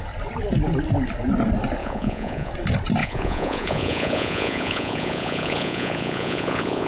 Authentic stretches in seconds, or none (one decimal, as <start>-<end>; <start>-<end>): 0.0-1.8; 2.5-3.0